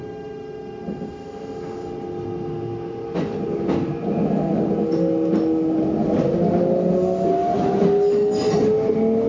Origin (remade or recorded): recorded